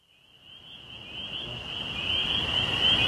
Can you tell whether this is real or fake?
real